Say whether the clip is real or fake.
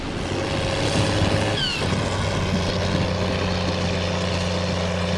real